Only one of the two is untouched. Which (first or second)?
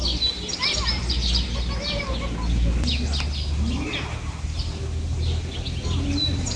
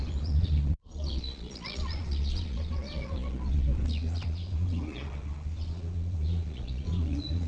first